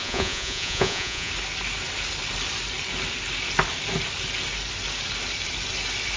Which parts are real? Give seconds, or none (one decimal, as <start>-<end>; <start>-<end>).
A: 1.3-6.2